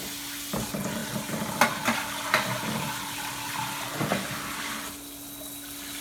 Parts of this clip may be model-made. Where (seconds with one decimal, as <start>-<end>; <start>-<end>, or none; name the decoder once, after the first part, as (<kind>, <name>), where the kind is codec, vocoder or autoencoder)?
none